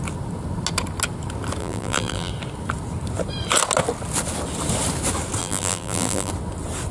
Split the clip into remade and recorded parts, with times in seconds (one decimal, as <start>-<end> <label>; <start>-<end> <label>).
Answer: 0.0-1.6 recorded; 1.6-2.3 remade; 2.3-5.4 recorded; 5.4-6.3 remade; 6.3-6.9 recorded

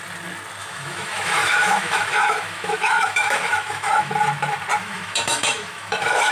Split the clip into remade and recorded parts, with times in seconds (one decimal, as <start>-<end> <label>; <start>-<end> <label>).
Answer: 0.0-0.6 recorded; 0.6-4.1 remade; 4.1-4.8 recorded; 4.8-6.3 remade

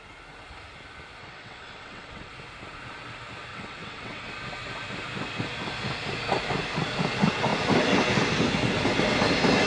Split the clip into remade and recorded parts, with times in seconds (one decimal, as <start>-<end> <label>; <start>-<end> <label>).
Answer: 0.0-1.2 recorded; 1.2-2.3 remade; 2.3-3.5 recorded; 3.5-4.3 remade; 4.3-9.7 recorded

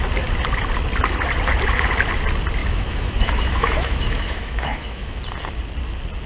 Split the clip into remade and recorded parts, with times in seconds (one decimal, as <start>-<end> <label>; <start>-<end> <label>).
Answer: 0.0-2.6 recorded; 2.6-5.2 remade; 5.2-6.3 recorded

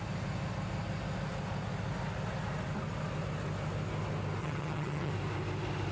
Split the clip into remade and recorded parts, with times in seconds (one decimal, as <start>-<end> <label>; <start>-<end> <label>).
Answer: 0.0-4.4 recorded; 4.4-5.1 remade; 5.1-5.9 recorded

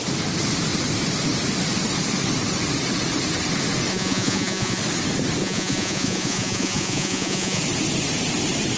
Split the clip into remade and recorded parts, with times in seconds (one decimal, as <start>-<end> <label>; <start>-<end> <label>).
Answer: 0.0-3.9 recorded; 3.9-4.8 remade; 4.8-5.4 recorded; 5.4-7.6 remade; 7.6-8.8 recorded

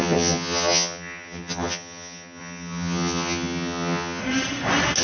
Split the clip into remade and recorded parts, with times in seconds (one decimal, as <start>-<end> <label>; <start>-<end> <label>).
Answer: 0.0-4.2 remade; 4.2-5.0 recorded